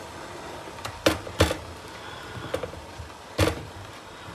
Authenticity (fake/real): real